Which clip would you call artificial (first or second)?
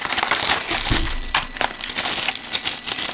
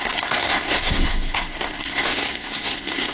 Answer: second